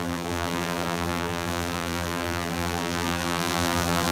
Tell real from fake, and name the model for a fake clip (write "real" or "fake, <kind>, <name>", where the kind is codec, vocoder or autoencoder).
fake, vocoder, BigVGAN v2